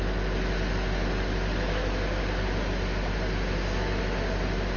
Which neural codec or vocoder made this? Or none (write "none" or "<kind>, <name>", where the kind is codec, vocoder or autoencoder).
none